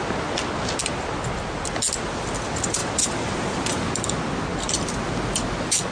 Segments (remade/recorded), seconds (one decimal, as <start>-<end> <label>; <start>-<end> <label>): 0.0-2.8 recorded; 2.8-3.9 remade; 3.9-5.9 recorded